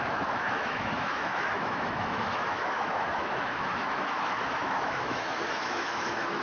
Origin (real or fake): fake